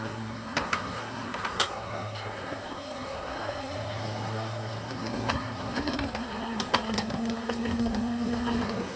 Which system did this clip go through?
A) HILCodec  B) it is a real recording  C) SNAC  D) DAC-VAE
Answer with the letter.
C